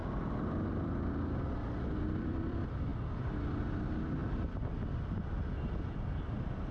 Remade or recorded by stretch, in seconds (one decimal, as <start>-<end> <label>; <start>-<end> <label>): 0.0-2.0 recorded; 2.0-2.9 remade; 2.9-3.6 recorded; 3.6-4.2 remade; 4.2-5.4 recorded; 5.4-6.7 remade